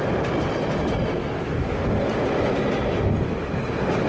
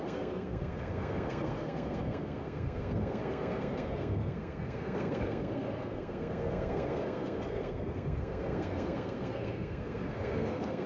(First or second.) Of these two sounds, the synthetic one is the second